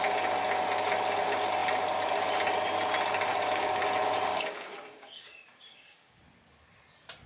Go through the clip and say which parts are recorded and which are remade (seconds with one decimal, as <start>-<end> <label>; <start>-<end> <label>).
0.0-3.3 recorded; 3.3-3.8 remade; 3.8-4.3 recorded; 4.3-6.2 remade; 6.2-7.3 recorded